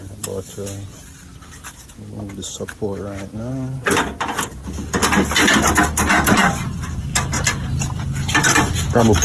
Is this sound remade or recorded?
recorded